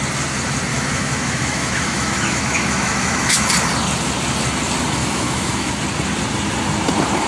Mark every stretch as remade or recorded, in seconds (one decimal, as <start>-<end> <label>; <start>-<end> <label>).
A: 0.0-0.7 recorded; 0.7-3.5 remade; 3.5-5.0 recorded; 5.0-5.7 remade; 5.7-7.3 recorded

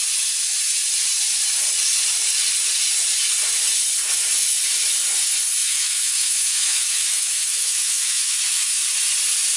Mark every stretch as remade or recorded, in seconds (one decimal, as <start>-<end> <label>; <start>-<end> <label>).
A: 0.0-5.6 recorded; 5.6-8.8 remade; 8.8-9.6 recorded

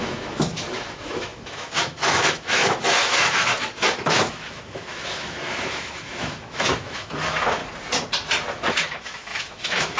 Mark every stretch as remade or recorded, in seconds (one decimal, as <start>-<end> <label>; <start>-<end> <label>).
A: 0.0-7.6 remade; 7.6-8.7 recorded; 8.7-10.0 remade

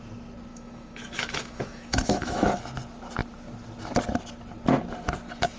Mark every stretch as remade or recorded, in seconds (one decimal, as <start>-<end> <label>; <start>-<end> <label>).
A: 0.0-0.5 recorded; 0.5-2.6 remade; 2.6-5.6 recorded

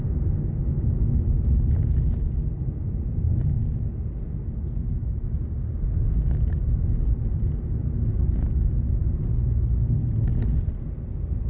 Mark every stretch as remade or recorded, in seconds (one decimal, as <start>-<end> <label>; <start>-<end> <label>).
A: 0.0-0.6 recorded; 0.6-1.5 remade; 1.5-11.5 recorded

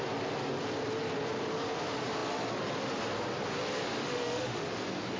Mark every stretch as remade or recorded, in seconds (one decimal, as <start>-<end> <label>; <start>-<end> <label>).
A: 0.0-4.0 recorded; 4.0-4.6 remade; 4.6-5.2 recorded

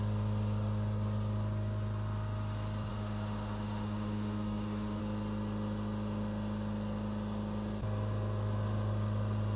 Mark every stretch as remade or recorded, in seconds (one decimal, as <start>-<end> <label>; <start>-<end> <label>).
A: 0.0-2.9 recorded; 2.9-5.0 remade; 5.0-9.6 recorded